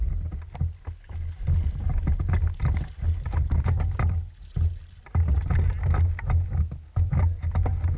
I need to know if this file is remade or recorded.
recorded